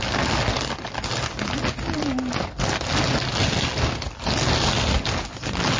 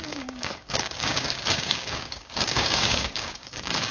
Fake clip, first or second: second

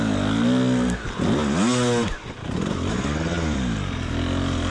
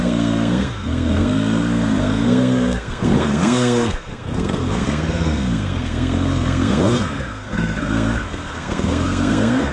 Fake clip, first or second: second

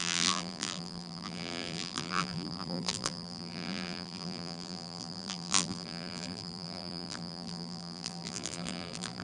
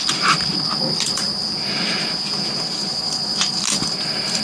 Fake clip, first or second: first